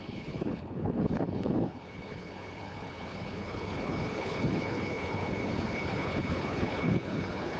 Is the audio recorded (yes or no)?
no